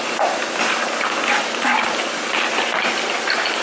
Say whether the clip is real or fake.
real